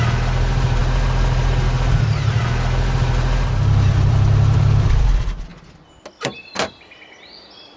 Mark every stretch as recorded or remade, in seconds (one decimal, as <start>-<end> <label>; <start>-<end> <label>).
0.0-0.8 remade; 0.8-3.9 recorded; 3.9-5.5 remade; 5.5-7.8 recorded